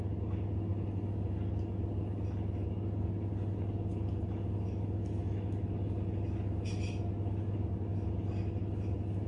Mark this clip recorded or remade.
recorded